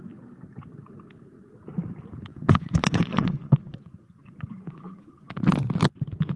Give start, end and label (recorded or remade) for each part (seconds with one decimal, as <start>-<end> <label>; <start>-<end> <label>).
0.0-2.3 recorded; 2.3-5.3 remade; 5.3-6.4 recorded